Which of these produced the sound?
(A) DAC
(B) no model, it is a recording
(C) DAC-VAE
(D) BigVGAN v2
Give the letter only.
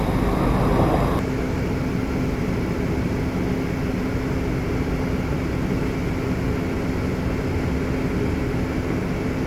B